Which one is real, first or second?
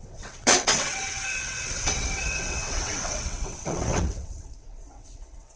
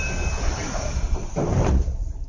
second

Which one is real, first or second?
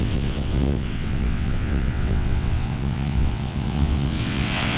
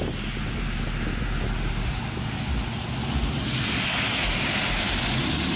second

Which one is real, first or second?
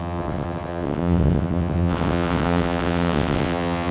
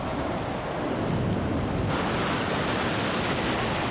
second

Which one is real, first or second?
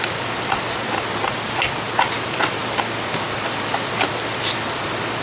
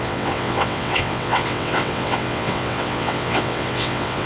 first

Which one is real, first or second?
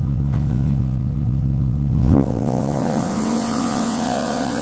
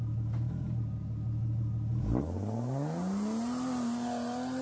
second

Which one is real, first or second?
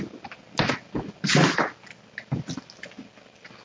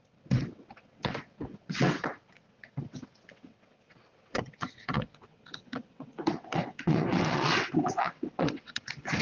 first